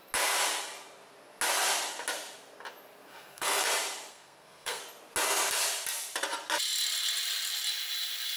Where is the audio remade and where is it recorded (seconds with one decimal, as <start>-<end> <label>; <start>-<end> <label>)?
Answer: 0.0-3.1 recorded; 3.1-3.6 remade; 3.6-4.1 recorded; 4.1-4.8 remade; 4.8-8.4 recorded

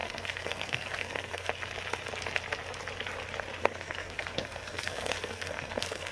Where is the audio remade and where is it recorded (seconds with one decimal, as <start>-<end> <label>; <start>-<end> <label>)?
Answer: 0.0-1.5 remade; 1.5-3.6 recorded; 3.6-6.1 remade

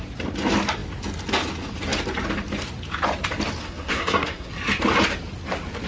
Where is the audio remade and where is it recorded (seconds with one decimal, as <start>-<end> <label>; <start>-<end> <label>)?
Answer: 0.0-3.6 recorded; 3.6-4.5 remade; 4.5-5.9 recorded

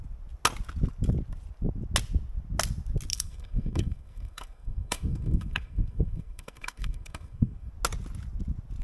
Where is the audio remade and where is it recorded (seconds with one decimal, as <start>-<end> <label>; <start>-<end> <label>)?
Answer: 0.0-3.1 recorded; 3.1-7.7 remade; 7.7-8.8 recorded

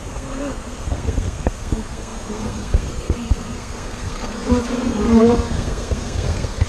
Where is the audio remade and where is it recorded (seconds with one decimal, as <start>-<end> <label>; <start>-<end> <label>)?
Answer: 0.0-6.7 remade

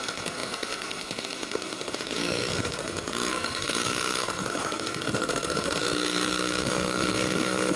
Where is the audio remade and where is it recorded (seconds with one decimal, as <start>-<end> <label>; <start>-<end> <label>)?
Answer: 0.0-7.8 remade

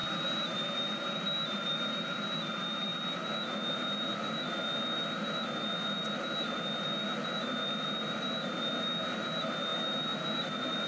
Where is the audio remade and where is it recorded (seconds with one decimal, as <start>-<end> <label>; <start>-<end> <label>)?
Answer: 0.0-10.9 recorded